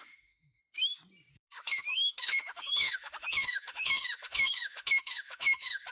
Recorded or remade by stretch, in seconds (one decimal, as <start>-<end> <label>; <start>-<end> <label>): 0.0-0.6 remade; 0.6-1.3 recorded; 1.3-5.9 remade